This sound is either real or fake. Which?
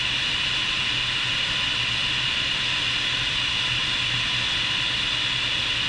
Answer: real